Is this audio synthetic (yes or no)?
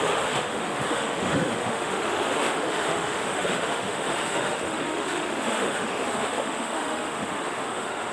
yes